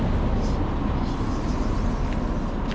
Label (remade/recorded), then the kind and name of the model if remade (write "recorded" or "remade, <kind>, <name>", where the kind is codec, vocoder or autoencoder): recorded